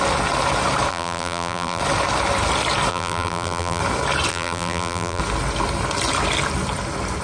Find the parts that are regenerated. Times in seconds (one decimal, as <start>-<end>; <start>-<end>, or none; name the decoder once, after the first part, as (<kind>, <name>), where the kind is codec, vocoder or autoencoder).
0.9-1.8 (vocoder, BigVGAN v2); 2.9-3.8; 4.3-5.2